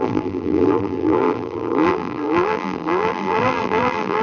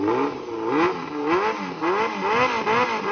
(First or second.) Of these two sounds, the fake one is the first